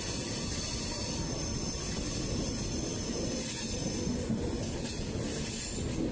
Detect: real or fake real